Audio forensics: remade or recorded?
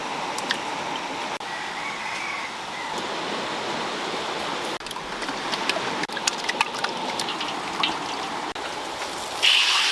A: recorded